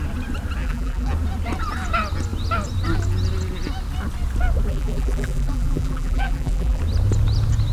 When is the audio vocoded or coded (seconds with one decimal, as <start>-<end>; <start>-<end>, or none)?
0.6-1.1; 4.7-6.8